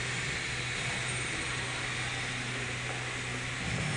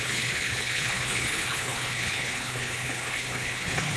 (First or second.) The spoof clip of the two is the second